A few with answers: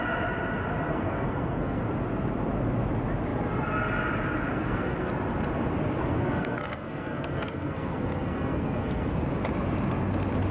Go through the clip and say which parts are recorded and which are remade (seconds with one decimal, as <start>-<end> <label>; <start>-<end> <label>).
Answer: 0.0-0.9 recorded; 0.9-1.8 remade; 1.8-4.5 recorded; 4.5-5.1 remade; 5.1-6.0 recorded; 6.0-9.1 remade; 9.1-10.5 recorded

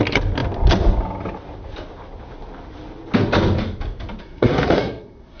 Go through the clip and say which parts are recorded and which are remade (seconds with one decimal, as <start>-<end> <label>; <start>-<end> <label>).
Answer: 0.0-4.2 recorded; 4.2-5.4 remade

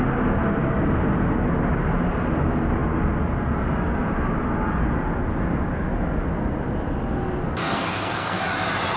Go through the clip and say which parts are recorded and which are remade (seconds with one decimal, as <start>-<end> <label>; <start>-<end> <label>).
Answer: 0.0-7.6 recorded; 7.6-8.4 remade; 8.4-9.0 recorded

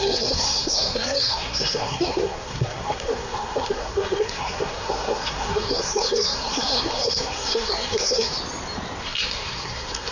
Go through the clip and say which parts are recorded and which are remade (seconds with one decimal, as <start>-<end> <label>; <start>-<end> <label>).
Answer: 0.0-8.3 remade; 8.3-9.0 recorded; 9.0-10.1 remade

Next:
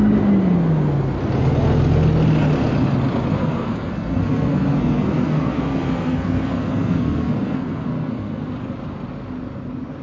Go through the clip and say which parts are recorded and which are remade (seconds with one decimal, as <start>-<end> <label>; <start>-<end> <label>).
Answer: 0.0-3.4 recorded; 3.4-8.5 remade; 8.5-10.0 recorded

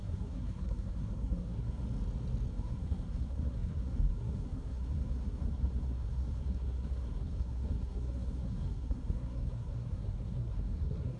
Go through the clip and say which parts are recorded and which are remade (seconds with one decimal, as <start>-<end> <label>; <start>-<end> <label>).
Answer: 0.0-1.8 remade; 1.8-2.5 recorded; 2.5-11.2 remade